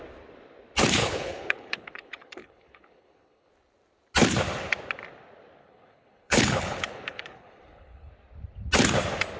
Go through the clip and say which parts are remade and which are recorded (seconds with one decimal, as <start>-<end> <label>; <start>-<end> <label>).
0.0-1.0 recorded; 1.0-3.5 remade; 3.5-5.6 recorded; 5.6-8.1 remade; 8.1-9.4 recorded